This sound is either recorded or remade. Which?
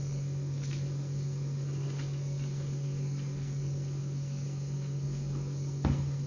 remade